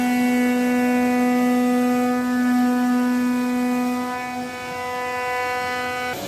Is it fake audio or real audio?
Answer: real